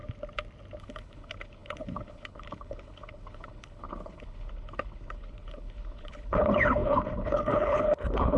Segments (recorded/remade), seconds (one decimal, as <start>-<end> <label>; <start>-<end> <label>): 0.0-0.8 recorded; 0.8-8.4 remade